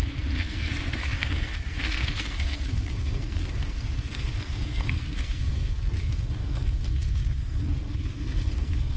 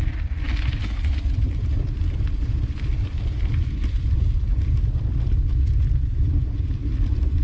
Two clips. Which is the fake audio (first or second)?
first